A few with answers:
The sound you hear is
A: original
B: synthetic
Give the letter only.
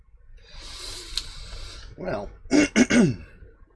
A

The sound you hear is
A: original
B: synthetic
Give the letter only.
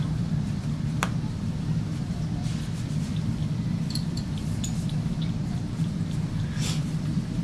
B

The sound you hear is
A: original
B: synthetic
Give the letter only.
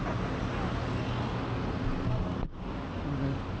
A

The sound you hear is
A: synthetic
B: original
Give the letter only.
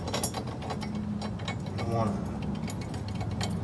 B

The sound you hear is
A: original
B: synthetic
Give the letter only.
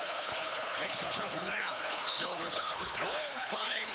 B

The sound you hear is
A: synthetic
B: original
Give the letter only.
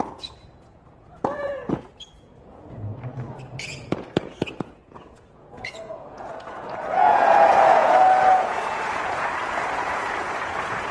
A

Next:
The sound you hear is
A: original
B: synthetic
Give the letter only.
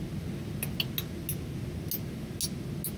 A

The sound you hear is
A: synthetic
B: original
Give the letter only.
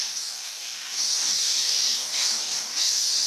A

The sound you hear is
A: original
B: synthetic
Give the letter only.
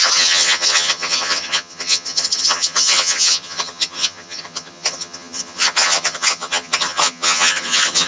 B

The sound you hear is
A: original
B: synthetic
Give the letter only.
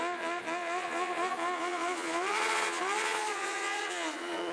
B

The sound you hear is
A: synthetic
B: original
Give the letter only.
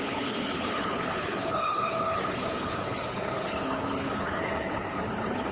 A